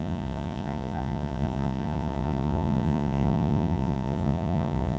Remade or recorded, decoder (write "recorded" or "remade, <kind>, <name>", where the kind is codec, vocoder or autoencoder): remade, vocoder, Vocos